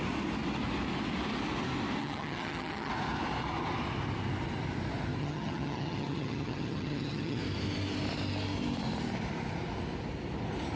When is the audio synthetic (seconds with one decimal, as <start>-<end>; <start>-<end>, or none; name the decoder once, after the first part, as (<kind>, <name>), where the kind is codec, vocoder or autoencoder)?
2.0-2.9 (vocoder, HiFi-GAN); 5.2-7.4